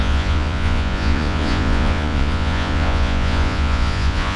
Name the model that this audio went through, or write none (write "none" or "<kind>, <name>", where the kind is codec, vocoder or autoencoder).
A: vocoder, Vocos